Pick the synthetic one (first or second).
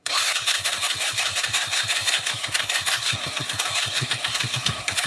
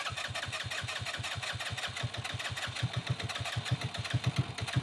first